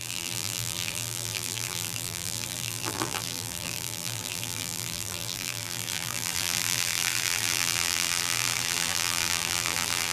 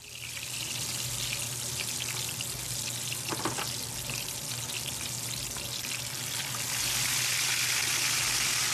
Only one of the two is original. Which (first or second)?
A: second